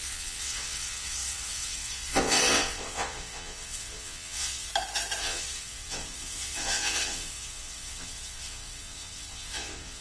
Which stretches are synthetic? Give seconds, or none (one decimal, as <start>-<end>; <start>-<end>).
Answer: 0.0-4.7; 5.2-10.0